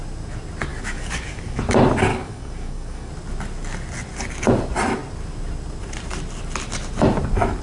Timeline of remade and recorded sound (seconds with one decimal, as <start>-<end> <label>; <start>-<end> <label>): 0.0-0.7 recorded; 0.7-1.6 remade; 1.6-2.1 recorded; 2.1-3.1 remade; 3.1-7.6 recorded